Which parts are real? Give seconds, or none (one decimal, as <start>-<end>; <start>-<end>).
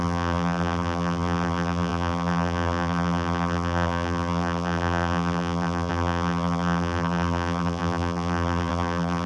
none